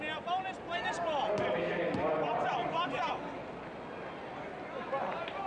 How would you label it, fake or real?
real